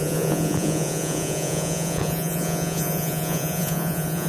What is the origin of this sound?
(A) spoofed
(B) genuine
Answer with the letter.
A